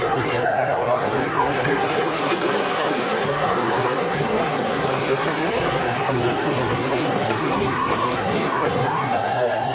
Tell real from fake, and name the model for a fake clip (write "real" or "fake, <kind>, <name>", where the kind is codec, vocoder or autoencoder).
fake, codec, SNAC